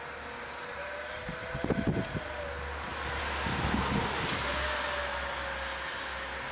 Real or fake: real